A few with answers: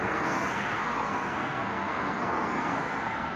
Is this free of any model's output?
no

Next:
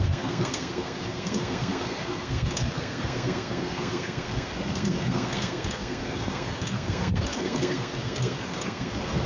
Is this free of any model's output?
no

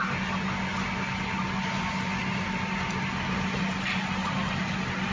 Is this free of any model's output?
yes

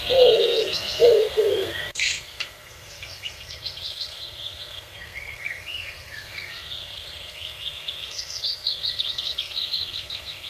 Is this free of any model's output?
no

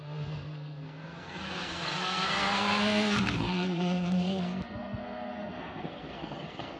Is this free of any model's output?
no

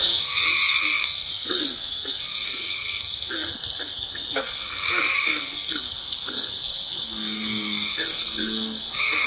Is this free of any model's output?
no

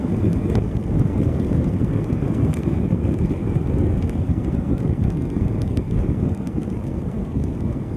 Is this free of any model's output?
no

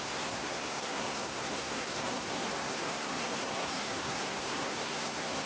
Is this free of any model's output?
no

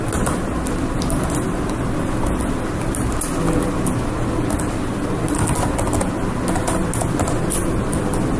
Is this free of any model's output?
yes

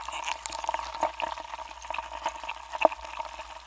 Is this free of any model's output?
yes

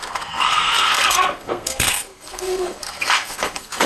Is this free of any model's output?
no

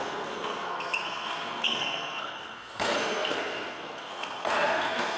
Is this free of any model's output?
no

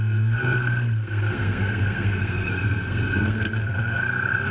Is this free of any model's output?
no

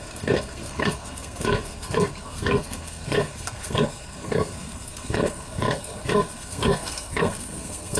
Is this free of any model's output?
no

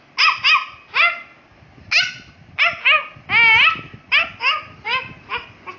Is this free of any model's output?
yes